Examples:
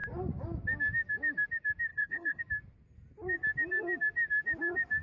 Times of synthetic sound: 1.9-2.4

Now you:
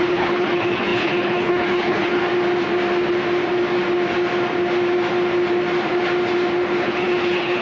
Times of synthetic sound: 0.0-2.2; 6.8-7.6

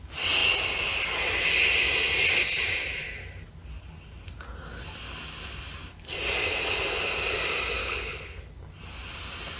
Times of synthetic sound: 7.8-8.4

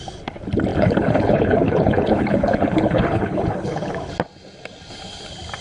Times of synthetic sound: 0.7-4.1

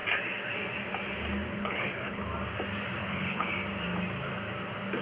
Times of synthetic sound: 1.6-2.2; 3.0-3.5

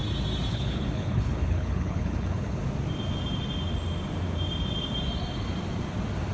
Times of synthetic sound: 0.5-2.6